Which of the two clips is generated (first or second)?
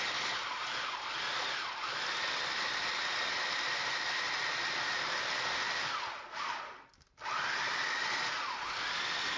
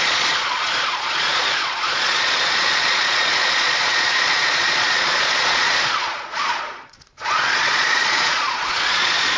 second